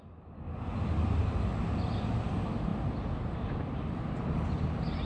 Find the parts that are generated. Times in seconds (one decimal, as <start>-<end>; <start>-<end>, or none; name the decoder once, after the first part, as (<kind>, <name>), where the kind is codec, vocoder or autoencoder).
none